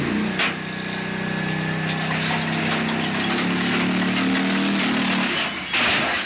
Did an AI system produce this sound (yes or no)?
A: no